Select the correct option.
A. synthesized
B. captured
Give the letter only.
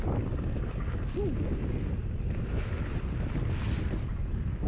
B